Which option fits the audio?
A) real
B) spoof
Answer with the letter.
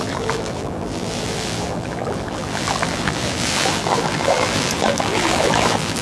B